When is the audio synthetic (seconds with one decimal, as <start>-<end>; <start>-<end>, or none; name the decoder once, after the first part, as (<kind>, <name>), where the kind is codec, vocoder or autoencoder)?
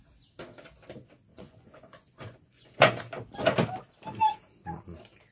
1.3-3.0 (vocoder, Vocos)